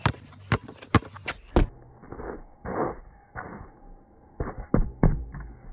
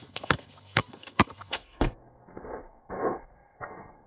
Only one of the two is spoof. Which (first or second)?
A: second